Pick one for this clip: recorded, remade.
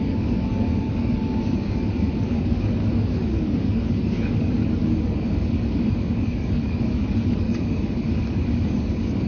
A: remade